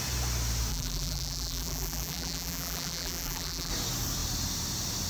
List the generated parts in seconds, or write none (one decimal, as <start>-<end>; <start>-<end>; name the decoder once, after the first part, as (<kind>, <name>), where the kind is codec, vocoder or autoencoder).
0.7-3.7 (vocoder, BigVGAN v2)